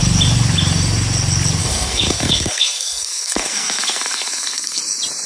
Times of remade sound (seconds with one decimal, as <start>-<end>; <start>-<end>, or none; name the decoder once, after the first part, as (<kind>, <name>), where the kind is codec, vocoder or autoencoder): 1.6-4.8 (codec, SNAC)